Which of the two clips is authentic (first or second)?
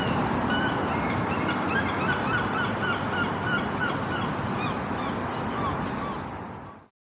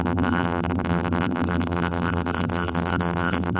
first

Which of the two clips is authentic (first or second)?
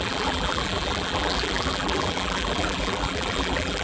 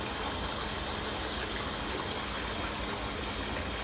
second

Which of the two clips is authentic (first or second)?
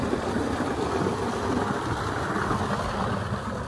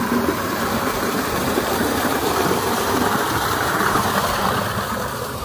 first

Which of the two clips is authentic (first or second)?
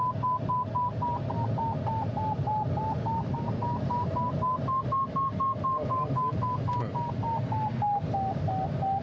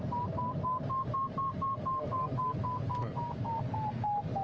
first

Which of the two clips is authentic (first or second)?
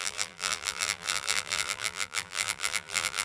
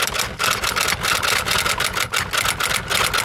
second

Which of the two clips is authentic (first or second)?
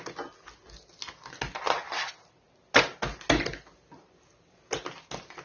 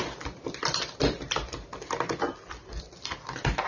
first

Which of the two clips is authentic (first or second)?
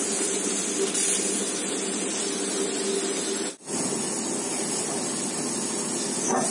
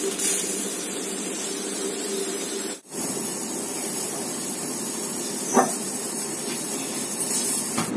first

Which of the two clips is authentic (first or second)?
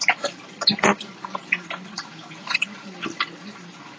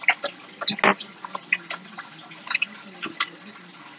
second